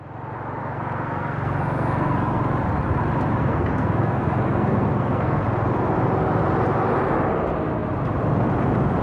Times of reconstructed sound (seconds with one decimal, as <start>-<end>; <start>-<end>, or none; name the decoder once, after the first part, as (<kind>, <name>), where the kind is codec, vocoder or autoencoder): 0.6-2.4 (codec, SNAC); 3.4-5.4

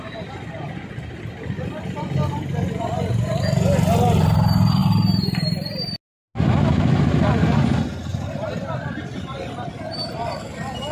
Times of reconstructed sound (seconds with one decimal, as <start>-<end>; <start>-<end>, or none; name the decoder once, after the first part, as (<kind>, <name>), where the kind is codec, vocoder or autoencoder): none

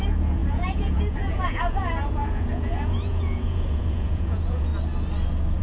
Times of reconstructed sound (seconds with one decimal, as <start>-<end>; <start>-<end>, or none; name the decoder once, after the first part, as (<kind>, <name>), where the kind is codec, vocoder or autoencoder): 0.0-4.7 (vocoder, Vocos)

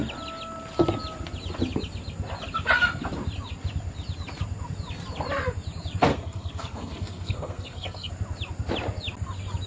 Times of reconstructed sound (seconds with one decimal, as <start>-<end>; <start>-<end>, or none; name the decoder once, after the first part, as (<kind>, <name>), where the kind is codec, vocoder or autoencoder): 6.1-8.1 (codec, SNAC)

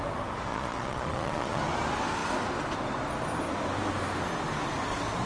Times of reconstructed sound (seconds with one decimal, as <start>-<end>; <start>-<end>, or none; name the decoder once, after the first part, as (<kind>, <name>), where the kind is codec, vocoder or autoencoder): 0.5-1.6 (vocoder, Vocos)

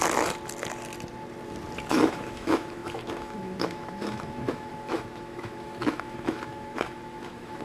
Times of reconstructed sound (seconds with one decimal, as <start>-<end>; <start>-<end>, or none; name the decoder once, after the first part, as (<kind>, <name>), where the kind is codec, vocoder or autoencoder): 1.9-7.6 (autoencoder, DAC-VAE)

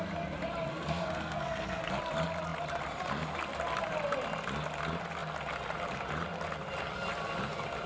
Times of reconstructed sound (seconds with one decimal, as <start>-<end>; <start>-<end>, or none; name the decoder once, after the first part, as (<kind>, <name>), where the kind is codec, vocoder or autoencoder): 0.7-1.8 (codec, SNAC)

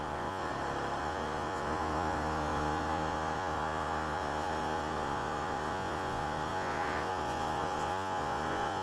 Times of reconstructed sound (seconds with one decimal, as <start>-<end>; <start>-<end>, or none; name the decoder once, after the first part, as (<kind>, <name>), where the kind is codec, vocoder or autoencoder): 0.0-0.5 (vocoder, Vocos); 1.0-8.8